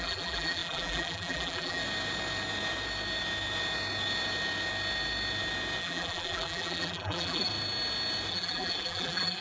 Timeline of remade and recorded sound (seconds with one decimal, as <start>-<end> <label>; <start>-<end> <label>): 0.0-1.8 remade; 1.8-5.8 recorded; 5.8-7.5 remade; 7.5-8.3 recorded; 8.3-9.4 remade